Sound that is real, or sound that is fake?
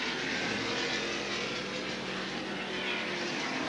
real